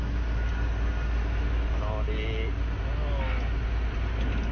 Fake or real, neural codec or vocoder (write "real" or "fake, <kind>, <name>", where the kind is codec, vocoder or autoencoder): real